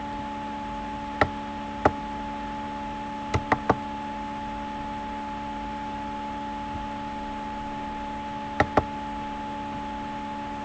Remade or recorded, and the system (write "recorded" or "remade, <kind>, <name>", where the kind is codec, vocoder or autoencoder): recorded